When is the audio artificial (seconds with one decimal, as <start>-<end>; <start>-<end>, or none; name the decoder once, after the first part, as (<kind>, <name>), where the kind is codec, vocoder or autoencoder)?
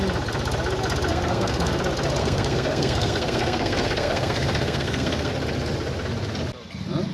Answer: 1.1-1.8 (codec, SNAC); 2.2-5.3